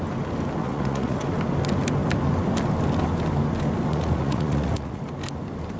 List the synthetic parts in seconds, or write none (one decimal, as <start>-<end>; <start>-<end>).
0.6-1.2; 3.9-5.0